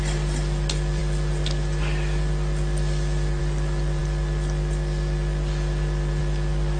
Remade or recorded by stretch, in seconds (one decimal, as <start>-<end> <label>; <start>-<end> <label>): 0.0-6.8 recorded